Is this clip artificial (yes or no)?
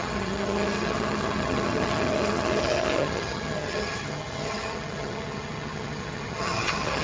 yes